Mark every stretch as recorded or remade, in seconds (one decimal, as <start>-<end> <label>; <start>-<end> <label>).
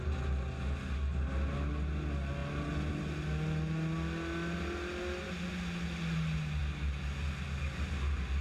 0.0-8.4 recorded